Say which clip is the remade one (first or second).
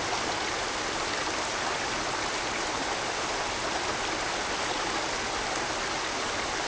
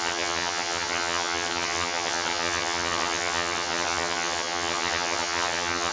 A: second